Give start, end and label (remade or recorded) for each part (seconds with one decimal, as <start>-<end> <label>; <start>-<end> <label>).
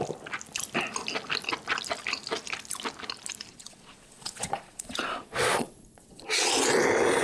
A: 0.0-3.5 recorded; 3.5-6.5 remade; 6.5-7.2 recorded